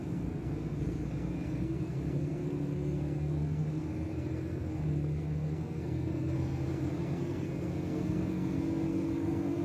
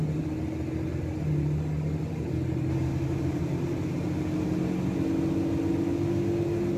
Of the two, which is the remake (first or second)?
first